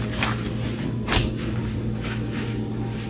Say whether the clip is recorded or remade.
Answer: recorded